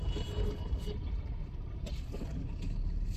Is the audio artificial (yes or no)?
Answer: no